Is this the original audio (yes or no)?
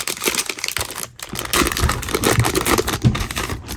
yes